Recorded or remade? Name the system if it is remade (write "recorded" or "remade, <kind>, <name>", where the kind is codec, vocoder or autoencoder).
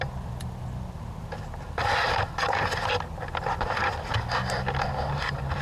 recorded